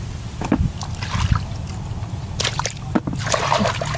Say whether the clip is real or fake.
real